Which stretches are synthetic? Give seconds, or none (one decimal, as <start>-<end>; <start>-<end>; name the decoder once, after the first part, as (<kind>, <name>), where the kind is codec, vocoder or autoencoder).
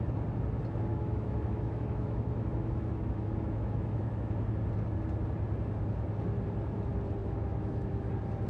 0.9-4.4 (autoencoder, DAC-VAE); 7.2-8.1